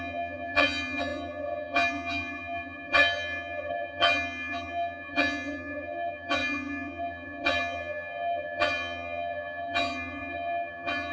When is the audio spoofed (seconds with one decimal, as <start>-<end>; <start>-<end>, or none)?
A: 0.0-11.1